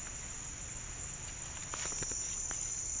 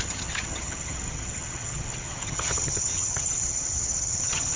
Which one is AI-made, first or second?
second